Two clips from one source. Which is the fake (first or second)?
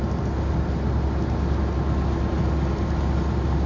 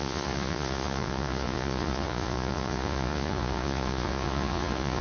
second